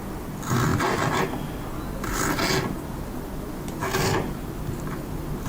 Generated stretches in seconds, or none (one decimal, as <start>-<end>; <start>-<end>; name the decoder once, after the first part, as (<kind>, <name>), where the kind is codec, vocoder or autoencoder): none